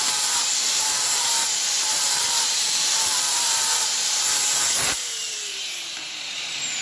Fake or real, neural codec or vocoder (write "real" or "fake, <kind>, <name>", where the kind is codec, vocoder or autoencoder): fake, vocoder, BigVGAN v2